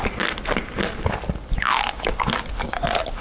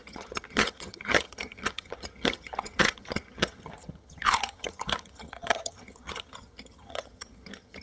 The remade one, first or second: second